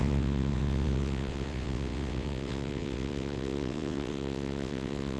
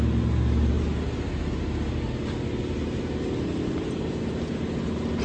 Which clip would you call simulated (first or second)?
first